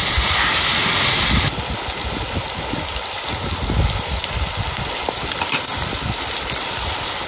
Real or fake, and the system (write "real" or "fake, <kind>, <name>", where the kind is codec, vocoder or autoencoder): fake, vocoder, BigVGAN v2